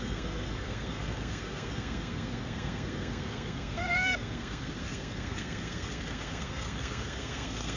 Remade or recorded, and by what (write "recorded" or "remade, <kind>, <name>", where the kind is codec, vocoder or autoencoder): remade, codec, SNAC